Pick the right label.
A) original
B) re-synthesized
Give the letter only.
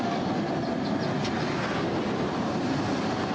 A